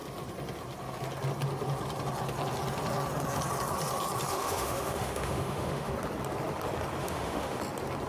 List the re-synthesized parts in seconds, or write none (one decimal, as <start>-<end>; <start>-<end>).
4.3-5.9; 7.0-7.6